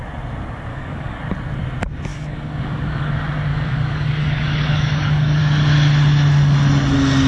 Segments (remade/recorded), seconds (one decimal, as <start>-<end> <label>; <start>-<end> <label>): 0.0-0.7 recorded; 0.7-1.2 remade; 1.2-2.1 recorded; 2.1-3.1 remade; 3.1-3.5 recorded; 3.5-5.4 remade; 5.4-7.3 recorded